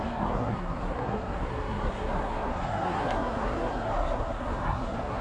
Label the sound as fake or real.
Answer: fake